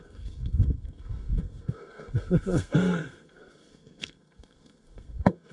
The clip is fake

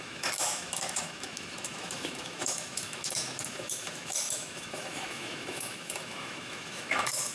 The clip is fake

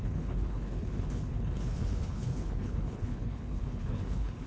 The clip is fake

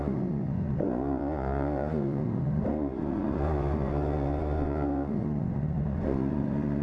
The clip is fake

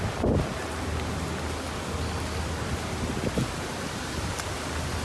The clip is real